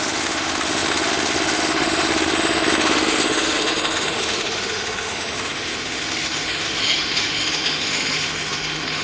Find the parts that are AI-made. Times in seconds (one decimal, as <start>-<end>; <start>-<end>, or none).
0.0-9.0